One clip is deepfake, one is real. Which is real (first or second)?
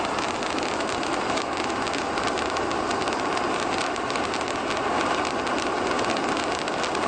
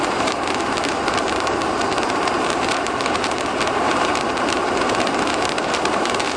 first